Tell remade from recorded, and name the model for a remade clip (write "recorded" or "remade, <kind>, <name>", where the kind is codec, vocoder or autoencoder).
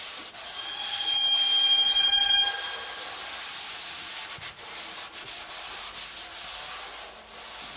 recorded